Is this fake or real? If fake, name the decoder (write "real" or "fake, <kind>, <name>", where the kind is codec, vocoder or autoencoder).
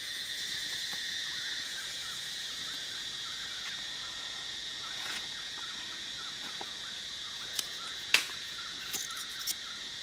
fake, vocoder, Vocos